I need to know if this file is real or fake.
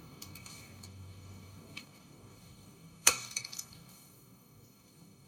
fake